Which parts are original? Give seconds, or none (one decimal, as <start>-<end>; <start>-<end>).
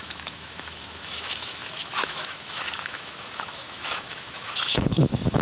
none